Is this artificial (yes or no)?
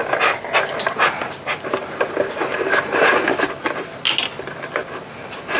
no